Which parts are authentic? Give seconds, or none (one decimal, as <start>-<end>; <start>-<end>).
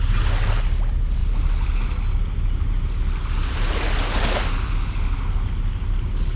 0.0-6.4